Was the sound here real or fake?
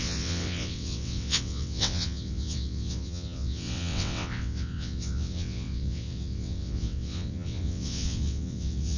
fake